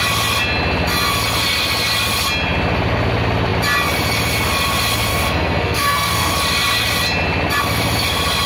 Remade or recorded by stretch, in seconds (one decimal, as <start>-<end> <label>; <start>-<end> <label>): 0.0-5.1 recorded; 5.1-6.3 remade; 6.3-8.5 recorded